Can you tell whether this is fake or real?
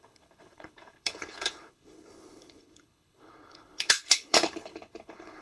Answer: fake